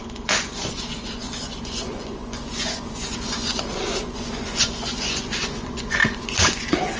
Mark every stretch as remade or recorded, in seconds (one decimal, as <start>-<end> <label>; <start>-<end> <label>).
0.0-7.0 remade